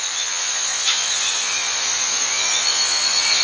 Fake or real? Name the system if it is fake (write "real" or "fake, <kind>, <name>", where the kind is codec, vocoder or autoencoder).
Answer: fake, vocoder, Vocos